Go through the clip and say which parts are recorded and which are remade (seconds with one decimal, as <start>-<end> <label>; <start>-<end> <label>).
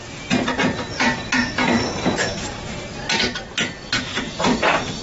0.0-1.4 recorded; 1.4-2.9 remade; 2.9-4.1 recorded; 4.1-5.0 remade